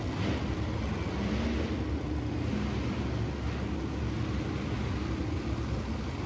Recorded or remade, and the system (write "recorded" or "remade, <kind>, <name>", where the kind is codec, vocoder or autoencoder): recorded